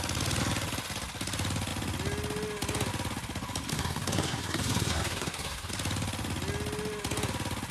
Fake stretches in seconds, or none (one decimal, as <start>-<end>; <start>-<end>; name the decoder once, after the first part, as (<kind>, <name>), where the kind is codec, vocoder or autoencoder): 3.7-5.7 (codec, SNAC)